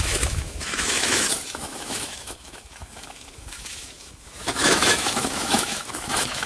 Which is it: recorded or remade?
remade